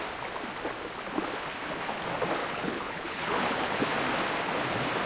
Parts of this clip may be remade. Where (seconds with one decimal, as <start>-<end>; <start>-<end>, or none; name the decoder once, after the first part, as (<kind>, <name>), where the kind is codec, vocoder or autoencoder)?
2.4-3.8 (codec, HILCodec)